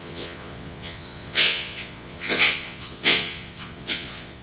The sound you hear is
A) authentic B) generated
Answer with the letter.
B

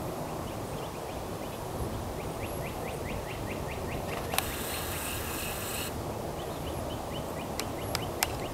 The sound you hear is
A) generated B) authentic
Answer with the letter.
B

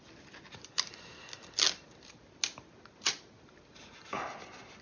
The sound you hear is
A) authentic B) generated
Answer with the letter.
A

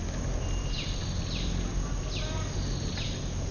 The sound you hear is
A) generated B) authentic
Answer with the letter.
B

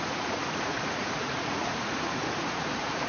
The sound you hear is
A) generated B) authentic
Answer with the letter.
A